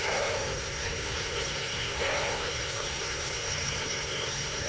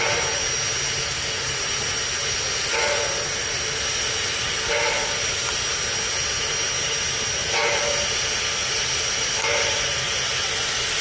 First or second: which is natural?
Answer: second